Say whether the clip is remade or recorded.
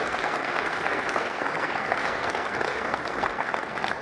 remade